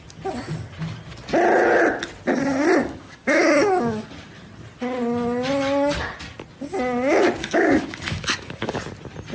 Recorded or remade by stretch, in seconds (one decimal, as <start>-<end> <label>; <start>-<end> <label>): 0.0-2.8 recorded; 2.8-4.1 remade; 4.1-7.4 recorded; 7.4-8.8 remade; 8.8-9.3 recorded